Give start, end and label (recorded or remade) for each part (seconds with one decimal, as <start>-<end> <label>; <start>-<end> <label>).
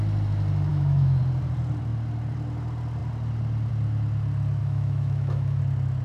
0.0-0.7 recorded; 0.7-1.2 remade; 1.2-4.6 recorded; 4.6-5.6 remade; 5.6-6.0 recorded